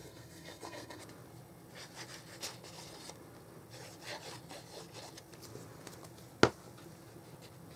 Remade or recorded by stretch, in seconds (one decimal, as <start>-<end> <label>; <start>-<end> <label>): 0.0-1.0 remade; 1.0-7.8 recorded